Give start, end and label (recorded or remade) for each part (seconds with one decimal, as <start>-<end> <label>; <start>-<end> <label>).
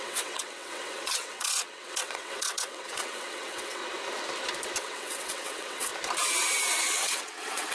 0.0-3.8 remade; 3.8-4.8 recorded; 4.8-5.9 remade; 5.9-6.8 recorded; 6.8-7.7 remade